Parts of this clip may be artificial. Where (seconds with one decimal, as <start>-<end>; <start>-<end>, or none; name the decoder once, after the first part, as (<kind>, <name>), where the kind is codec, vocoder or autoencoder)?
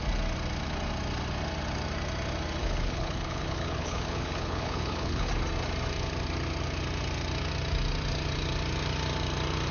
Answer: 2.6-5.3 (codec, HILCodec)